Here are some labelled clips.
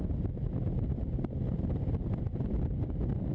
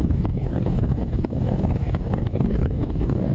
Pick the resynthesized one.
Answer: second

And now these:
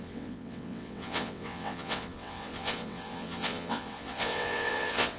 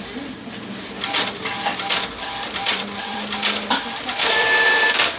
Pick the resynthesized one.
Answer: first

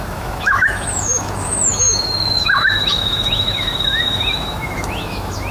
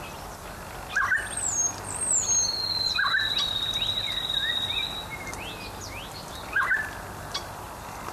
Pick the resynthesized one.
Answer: first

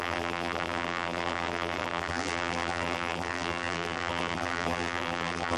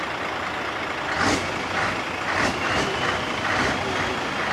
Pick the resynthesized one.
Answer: first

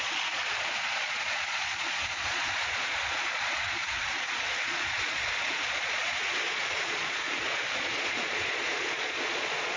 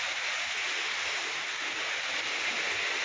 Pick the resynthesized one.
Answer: first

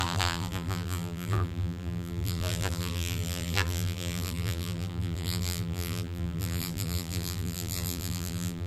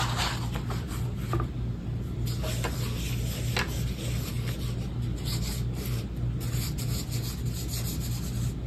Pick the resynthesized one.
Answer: first